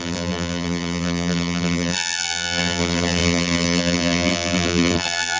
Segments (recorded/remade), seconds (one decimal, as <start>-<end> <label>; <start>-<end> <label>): 0.0-5.4 remade